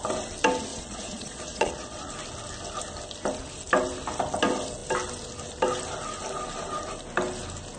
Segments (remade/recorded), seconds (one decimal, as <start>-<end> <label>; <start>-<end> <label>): 0.0-0.7 recorded; 0.7-2.1 remade; 2.1-7.8 recorded